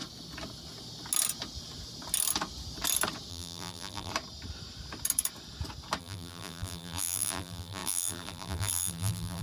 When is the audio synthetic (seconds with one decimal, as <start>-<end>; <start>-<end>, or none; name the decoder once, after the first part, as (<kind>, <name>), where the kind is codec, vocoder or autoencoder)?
3.3-4.1 (vocoder, BigVGAN v2); 6.0-9.4